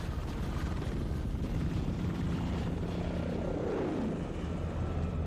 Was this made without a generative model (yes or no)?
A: yes